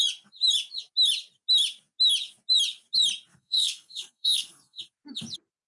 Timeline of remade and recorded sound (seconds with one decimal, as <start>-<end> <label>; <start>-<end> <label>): 0.0-3.3 recorded; 3.3-4.8 remade; 4.8-5.7 recorded